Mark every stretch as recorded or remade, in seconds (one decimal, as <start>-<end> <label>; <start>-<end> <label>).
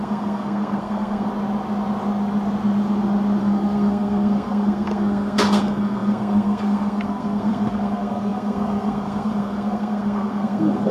0.0-1.3 remade; 1.3-3.4 recorded; 3.4-10.9 remade